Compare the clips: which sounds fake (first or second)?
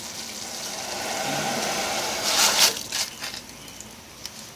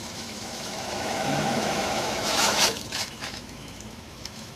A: second